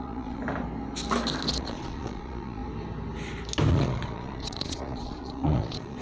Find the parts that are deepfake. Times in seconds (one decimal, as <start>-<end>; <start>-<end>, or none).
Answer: 0.0-0.4; 1.6-2.6; 3.7-6.0